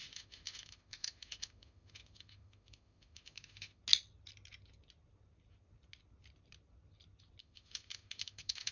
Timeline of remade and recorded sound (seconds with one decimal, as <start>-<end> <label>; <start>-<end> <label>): 0.0-3.8 remade; 3.8-7.4 recorded; 7.4-8.7 remade